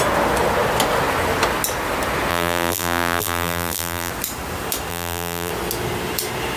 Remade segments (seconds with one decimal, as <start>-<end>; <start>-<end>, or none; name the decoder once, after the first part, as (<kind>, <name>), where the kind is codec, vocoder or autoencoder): 2.3-4.1 (vocoder, BigVGAN v2); 4.9-5.5